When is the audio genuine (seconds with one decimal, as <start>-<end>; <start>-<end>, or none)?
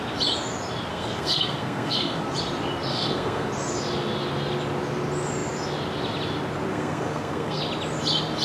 0.0-0.9; 2.2-2.9; 3.5-6.7; 7.6-8.4